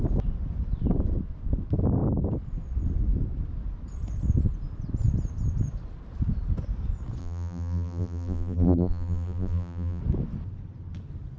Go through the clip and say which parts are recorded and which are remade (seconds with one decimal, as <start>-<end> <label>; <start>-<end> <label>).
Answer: 0.0-7.2 recorded; 7.2-10.0 remade; 10.0-11.4 recorded